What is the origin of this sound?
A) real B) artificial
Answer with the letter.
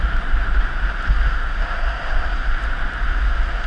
A